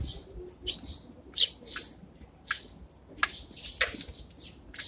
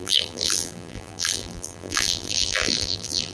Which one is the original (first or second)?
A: first